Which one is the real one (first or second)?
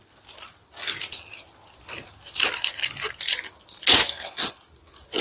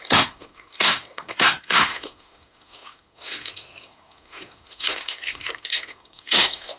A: first